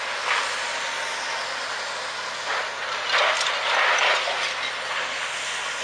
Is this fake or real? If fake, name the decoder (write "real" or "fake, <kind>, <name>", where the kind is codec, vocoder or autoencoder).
real